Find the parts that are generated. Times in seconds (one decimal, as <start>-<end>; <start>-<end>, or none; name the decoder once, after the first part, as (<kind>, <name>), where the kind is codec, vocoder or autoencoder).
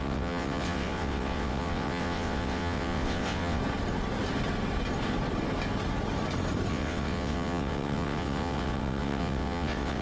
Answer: 0.0-3.6 (vocoder, WaveNeXt); 6.7-10.0